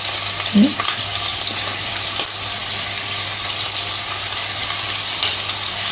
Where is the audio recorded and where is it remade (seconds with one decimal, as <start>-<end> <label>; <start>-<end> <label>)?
0.0-5.9 recorded